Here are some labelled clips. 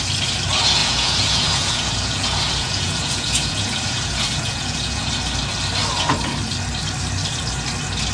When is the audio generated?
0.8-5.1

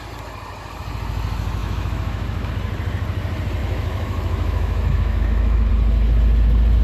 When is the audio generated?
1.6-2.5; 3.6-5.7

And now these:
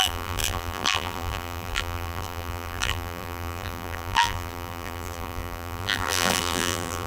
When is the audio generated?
0.0-7.1

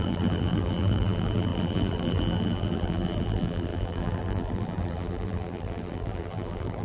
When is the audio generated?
0.0-6.8